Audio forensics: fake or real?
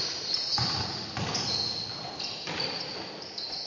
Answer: real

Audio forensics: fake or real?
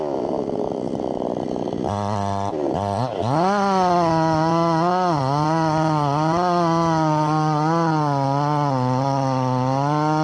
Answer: real